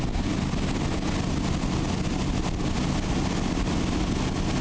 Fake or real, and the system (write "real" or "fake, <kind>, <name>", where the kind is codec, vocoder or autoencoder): real